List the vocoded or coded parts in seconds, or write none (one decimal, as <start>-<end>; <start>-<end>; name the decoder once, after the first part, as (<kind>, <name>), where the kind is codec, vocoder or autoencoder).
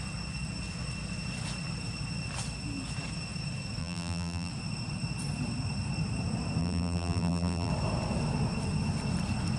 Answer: 3.8-4.5 (vocoder, BigVGAN v2); 6.6-7.7